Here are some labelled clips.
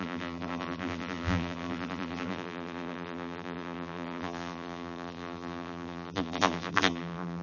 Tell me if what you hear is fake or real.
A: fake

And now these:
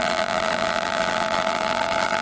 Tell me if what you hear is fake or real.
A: fake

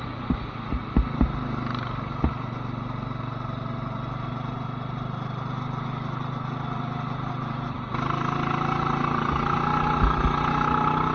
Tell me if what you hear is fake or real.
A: real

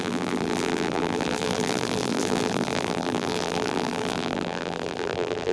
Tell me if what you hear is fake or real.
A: fake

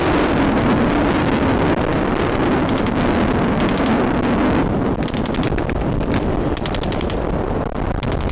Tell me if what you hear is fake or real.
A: fake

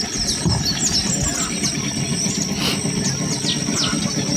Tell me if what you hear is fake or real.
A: real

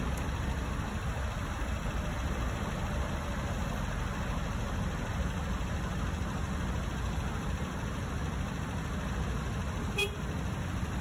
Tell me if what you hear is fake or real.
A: real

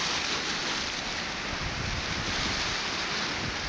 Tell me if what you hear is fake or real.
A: real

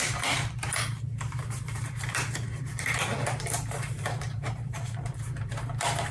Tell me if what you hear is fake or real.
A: fake